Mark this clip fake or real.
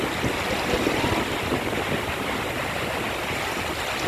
real